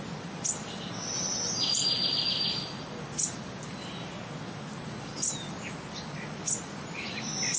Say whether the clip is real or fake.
real